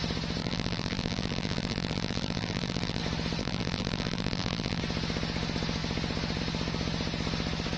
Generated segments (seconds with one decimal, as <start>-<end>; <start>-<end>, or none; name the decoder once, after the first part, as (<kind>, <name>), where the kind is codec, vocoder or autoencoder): 0.4-3.0 (vocoder, BigVGAN v2); 3.4-4.8